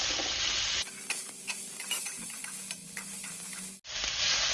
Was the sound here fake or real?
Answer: real